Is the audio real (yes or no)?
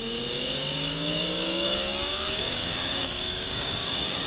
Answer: no